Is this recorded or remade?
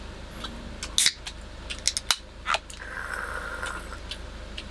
recorded